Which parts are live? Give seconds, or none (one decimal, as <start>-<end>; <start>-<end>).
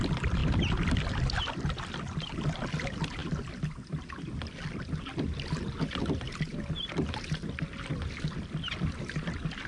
0.0-9.7